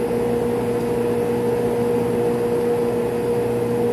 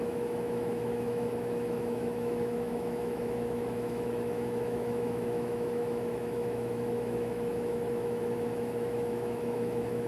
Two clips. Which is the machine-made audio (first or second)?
second